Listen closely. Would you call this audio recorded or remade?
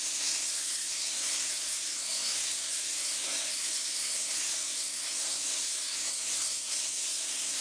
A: remade